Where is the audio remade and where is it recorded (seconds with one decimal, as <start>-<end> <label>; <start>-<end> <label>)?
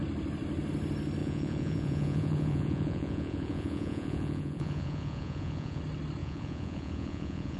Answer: 0.0-1.2 recorded; 1.2-5.8 remade; 5.8-6.2 recorded; 6.2-7.6 remade